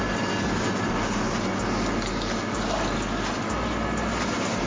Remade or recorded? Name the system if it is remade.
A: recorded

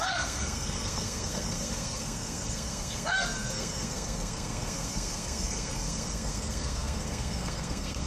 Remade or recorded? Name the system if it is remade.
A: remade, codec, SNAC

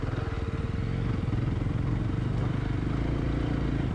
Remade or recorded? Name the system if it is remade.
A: recorded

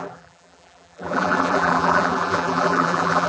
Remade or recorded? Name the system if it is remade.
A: remade, vocoder, BigVGAN v2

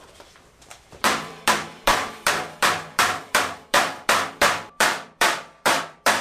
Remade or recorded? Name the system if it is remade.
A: remade, vocoder, BigVGAN v2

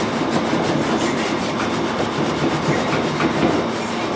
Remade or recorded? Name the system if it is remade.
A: recorded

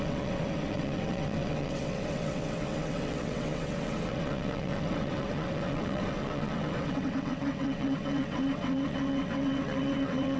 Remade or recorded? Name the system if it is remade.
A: remade, vocoder, WaveNeXt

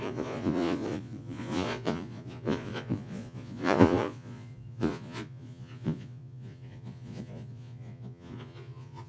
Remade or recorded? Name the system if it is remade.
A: remade, vocoder, Vocos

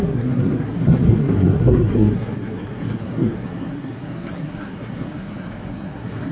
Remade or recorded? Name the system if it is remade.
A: remade, codec, SNAC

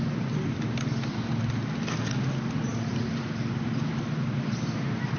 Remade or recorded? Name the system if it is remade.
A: recorded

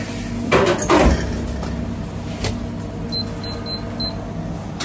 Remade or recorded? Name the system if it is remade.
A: recorded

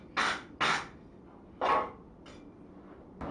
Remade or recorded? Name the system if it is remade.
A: recorded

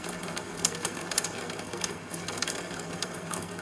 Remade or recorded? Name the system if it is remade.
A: remade, codec, SNAC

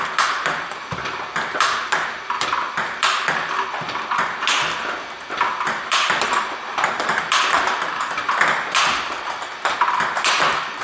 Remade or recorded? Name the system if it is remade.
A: remade, vocoder, BigVGAN v2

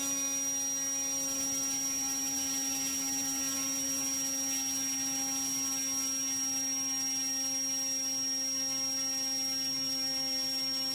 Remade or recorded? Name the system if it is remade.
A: recorded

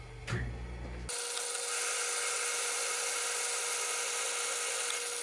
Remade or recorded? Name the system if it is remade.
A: recorded